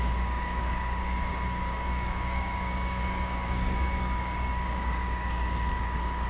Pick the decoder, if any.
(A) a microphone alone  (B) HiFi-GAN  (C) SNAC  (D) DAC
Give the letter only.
D